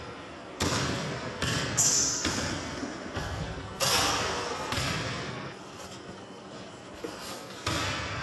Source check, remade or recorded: remade